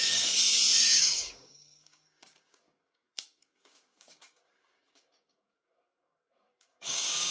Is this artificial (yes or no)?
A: yes